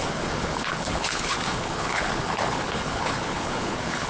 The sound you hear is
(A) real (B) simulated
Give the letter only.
B